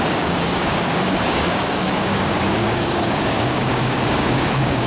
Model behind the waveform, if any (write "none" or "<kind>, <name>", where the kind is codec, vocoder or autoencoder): codec, DAC